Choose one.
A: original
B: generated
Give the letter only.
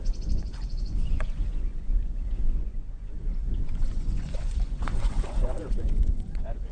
B